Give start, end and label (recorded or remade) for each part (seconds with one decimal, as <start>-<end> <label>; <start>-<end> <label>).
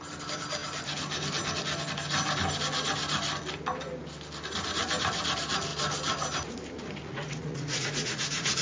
0.0-7.0 recorded; 7.0-8.6 remade